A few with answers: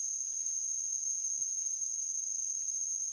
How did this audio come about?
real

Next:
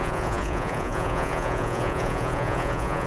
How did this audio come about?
fake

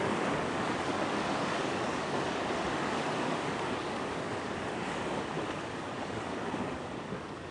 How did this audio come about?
fake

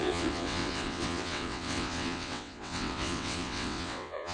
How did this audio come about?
fake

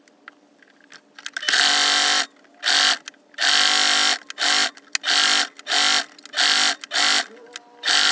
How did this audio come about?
real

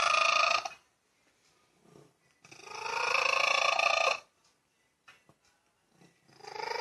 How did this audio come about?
real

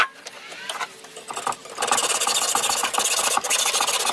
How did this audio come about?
real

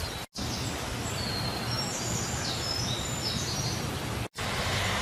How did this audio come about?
real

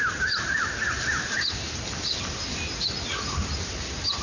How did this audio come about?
real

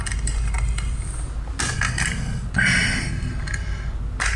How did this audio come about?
real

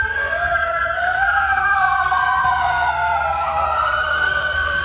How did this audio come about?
fake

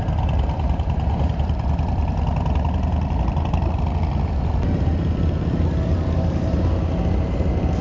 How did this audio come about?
real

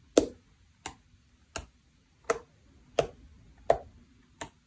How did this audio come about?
real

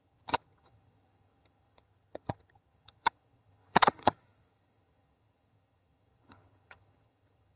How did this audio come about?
fake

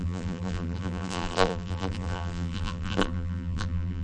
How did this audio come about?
fake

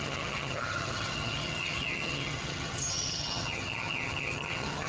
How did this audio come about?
fake